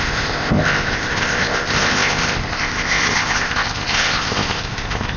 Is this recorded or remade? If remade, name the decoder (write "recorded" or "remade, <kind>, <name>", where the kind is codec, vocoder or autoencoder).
remade, codec, ZipCodec